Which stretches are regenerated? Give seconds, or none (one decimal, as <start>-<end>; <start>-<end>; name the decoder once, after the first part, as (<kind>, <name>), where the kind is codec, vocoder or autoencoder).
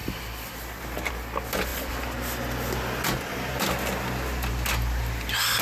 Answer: none